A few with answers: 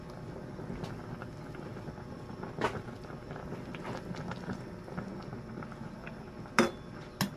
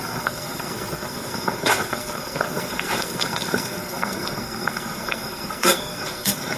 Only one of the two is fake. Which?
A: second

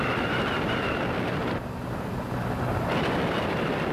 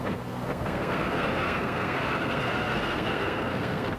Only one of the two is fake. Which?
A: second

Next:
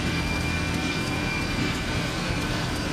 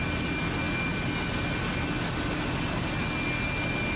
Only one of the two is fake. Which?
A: first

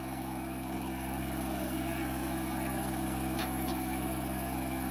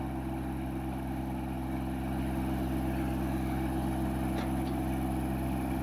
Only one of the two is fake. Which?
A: first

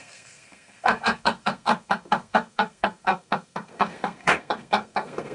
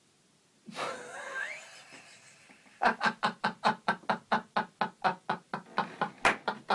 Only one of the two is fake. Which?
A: first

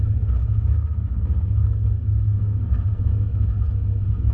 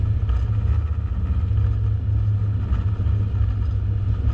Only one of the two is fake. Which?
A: first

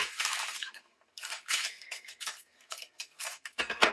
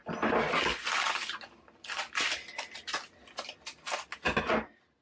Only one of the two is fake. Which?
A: first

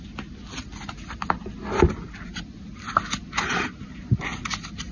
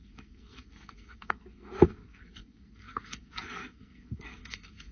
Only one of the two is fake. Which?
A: second